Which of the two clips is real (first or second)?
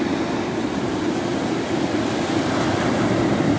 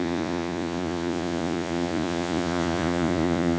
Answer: first